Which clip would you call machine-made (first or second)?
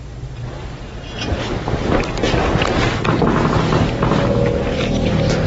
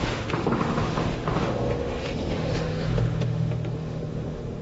second